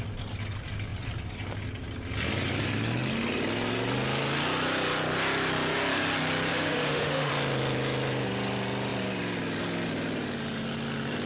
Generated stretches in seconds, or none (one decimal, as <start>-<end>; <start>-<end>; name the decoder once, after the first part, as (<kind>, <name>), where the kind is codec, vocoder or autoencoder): 6.5-7.3 (autoencoder, DAC-VAE)

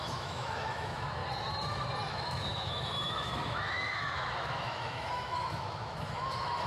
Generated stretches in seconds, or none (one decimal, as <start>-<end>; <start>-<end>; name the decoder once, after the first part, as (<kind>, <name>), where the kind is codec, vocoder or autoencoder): 0.0-1.2 (autoencoder, DAC-VAE); 2.1-6.7